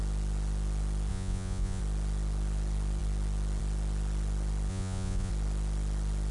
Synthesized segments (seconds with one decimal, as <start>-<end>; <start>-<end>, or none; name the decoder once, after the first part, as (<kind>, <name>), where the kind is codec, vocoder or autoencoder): 1.1-1.8 (vocoder, Vocos); 4.7-5.3